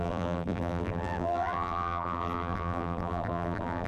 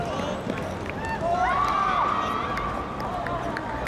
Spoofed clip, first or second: first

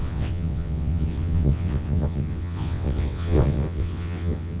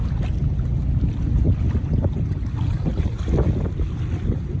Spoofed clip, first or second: first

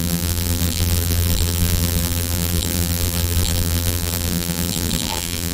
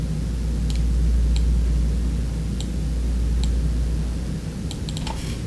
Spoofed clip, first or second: first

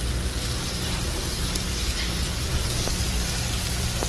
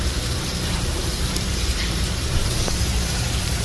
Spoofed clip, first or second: second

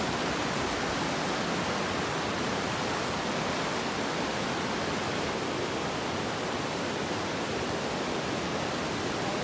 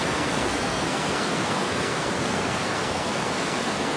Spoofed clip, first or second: second